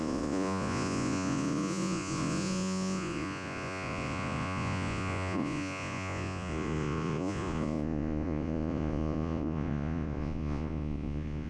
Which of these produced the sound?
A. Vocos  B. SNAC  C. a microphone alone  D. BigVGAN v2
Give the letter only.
A